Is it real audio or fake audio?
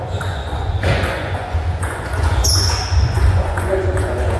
fake